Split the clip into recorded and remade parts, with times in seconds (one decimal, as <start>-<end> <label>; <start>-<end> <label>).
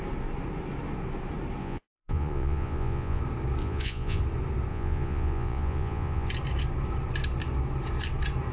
0.0-1.6 recorded; 1.6-3.2 remade; 3.2-3.6 recorded; 3.6-4.2 remade; 4.2-4.7 recorded; 4.7-6.3 remade; 6.3-8.5 recorded